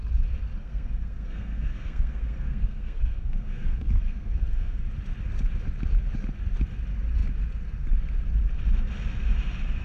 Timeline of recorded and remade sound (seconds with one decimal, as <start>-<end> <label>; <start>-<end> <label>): 0.0-0.6 recorded; 0.6-4.8 remade; 4.8-9.8 recorded